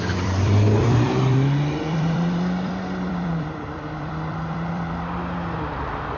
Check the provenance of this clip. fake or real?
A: fake